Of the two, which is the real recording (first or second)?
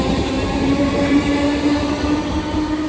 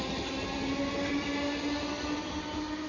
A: second